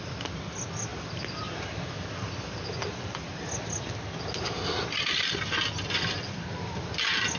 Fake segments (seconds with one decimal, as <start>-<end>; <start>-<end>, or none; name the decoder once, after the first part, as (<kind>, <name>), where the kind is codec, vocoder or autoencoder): none